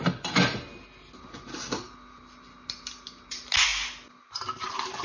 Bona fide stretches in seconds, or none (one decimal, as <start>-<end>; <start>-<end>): 0.0-5.0